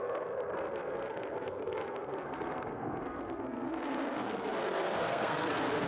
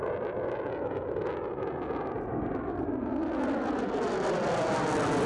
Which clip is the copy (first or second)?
first